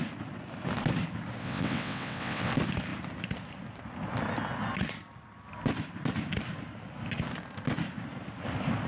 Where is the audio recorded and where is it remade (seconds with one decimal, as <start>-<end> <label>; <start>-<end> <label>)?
0.0-1.4 recorded; 1.4-2.5 remade; 2.5-8.9 recorded